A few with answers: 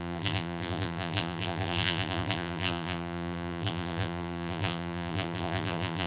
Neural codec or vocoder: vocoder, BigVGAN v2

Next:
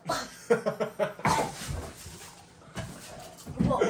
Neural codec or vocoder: none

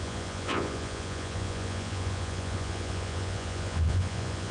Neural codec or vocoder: vocoder, Vocos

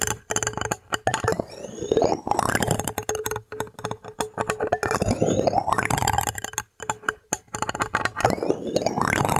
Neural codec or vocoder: none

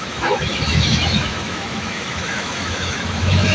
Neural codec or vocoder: autoencoder, DAC-VAE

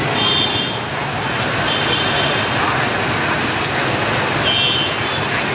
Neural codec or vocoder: none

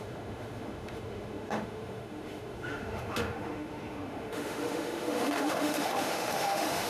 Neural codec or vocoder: autoencoder, DAC-VAE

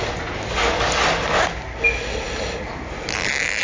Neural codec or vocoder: none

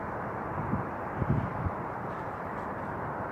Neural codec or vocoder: vocoder, BigVGAN v2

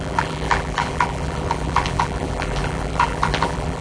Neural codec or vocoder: vocoder, BigVGAN v2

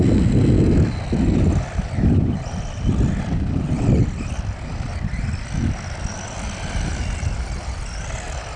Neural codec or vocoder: none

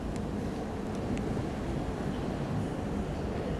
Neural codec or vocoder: none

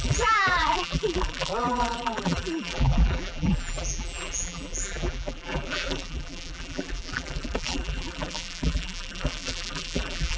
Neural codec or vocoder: vocoder, BigVGAN v2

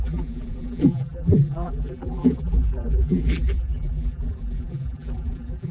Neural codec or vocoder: vocoder, BigVGAN v2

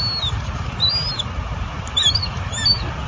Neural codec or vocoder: none